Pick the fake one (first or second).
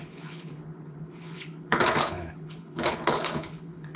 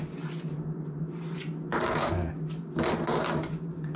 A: first